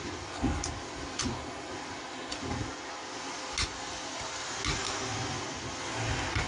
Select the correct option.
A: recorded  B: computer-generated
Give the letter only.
A